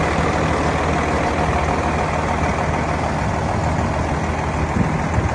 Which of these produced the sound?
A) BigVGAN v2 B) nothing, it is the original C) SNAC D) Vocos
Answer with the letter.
B